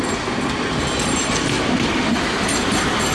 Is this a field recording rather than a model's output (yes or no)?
yes